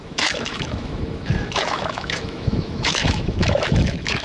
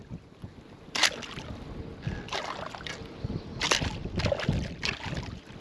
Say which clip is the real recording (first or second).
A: second